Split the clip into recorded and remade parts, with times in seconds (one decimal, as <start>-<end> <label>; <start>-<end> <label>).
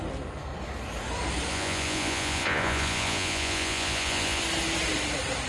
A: 0.0-1.5 recorded; 1.5-4.4 remade; 4.4-5.5 recorded